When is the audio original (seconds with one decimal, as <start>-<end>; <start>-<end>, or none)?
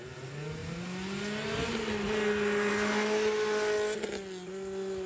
0.0-5.1